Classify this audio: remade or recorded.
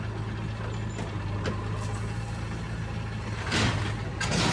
recorded